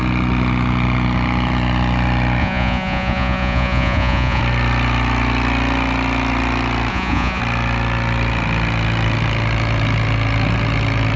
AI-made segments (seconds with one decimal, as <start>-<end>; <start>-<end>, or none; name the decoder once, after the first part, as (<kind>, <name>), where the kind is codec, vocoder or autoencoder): 2.4-4.4 (vocoder, Vocos); 6.9-7.4